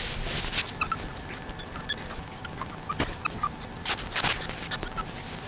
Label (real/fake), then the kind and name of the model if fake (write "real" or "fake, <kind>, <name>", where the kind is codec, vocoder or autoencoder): real